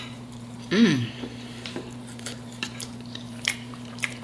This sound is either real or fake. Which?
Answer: fake